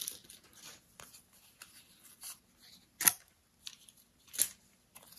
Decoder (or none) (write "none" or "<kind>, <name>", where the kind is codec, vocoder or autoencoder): none